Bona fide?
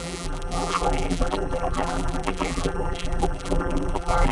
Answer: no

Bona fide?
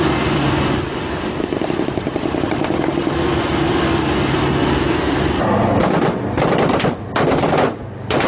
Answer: no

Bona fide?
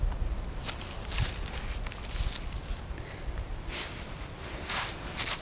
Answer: yes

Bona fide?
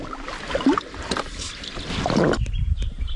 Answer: yes